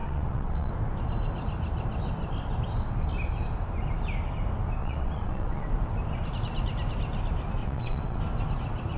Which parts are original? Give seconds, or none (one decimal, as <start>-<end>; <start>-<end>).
0.7-4.8; 5.7-7.6; 8.2-9.0